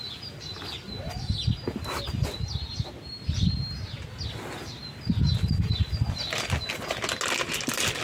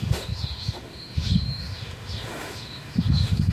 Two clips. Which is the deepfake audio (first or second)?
second